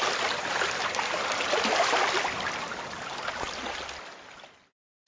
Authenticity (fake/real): real